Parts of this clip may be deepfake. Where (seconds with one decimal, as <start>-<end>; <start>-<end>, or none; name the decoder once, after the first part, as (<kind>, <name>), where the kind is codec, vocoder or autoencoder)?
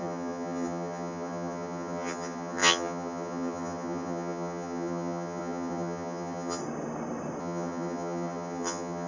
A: 0.0-6.6 (vocoder, HiFi-GAN); 7.4-9.1